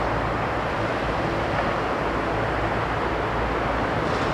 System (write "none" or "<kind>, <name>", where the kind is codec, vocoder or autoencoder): none